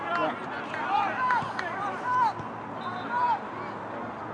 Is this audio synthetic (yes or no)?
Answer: no